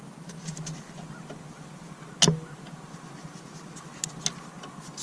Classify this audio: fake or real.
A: real